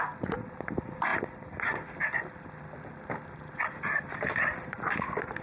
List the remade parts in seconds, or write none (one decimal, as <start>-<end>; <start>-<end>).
none